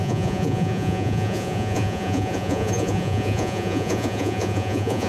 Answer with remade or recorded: remade